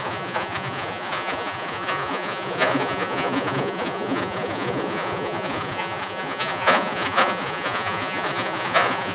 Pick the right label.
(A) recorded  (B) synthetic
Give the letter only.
B